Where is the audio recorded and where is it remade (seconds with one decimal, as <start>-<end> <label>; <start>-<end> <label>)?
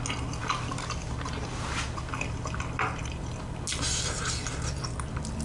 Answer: 0.0-5.4 recorded